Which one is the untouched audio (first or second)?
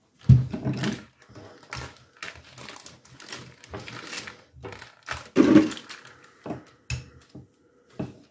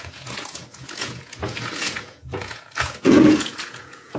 first